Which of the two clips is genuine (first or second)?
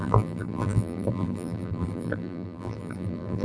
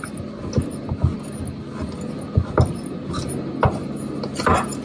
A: second